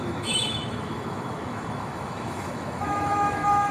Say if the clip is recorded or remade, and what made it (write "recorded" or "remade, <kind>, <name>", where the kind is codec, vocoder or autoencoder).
remade, autoencoder, DAC-VAE